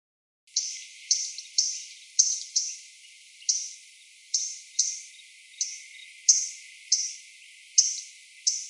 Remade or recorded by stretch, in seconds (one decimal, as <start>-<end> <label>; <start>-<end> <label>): 0.0-0.9 recorded; 0.9-3.4 remade; 3.4-4.2 recorded; 4.2-5.1 remade; 5.1-8.7 recorded